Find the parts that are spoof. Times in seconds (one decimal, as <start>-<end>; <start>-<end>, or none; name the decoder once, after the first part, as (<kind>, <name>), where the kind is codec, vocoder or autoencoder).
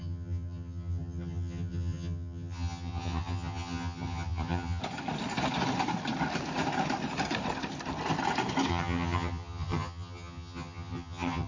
0.0-4.8 (vocoder, HiFi-GAN); 8.7-11.5